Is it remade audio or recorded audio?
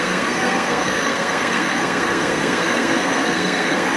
remade